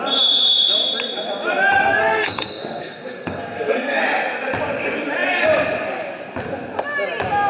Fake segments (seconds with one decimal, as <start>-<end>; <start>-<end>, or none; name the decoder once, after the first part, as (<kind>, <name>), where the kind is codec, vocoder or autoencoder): 2.0-4.0 (codec, SNAC)